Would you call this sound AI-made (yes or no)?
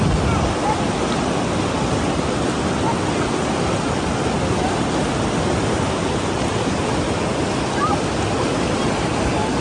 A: no